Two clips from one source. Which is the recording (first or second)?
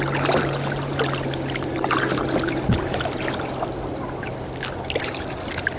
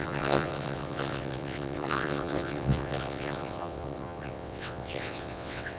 first